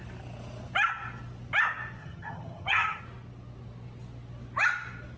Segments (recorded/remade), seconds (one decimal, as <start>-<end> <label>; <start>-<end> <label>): 0.0-2.0 recorded; 2.0-3.0 remade; 3.0-5.2 recorded